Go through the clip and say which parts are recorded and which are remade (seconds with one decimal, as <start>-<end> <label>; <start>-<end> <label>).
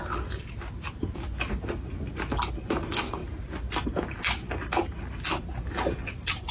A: 0.0-6.5 recorded